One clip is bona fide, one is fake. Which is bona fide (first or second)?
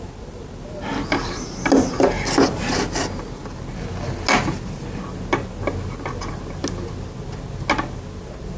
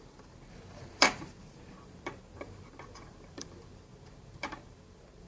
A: first